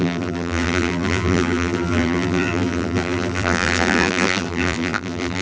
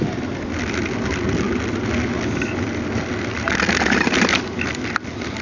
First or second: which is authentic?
second